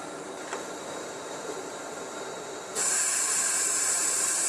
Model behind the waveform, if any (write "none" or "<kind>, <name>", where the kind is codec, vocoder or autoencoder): vocoder, BigVGAN v2